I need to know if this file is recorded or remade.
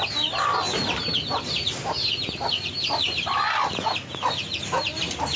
recorded